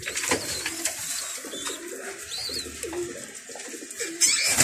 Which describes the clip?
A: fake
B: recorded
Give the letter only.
B